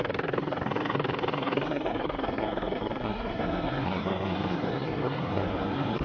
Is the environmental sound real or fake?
fake